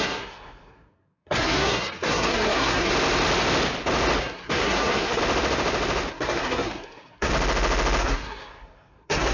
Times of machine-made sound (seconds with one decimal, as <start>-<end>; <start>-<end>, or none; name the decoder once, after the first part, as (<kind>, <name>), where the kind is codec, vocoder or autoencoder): 0.0-2.9 (codec, SNAC); 4.2-5.2; 6.1-7.3; 8.0-9.3